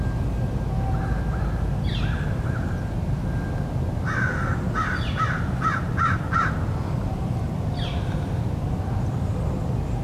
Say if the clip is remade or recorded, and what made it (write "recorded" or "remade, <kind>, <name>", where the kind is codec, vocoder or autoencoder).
recorded